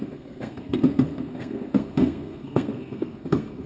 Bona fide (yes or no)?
no